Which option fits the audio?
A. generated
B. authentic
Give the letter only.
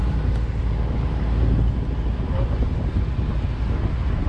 B